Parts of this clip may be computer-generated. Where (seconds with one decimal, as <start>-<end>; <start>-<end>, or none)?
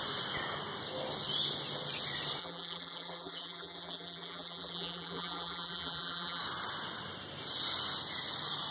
2.4-6.4